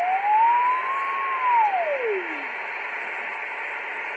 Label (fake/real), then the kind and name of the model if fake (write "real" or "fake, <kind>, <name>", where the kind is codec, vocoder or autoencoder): real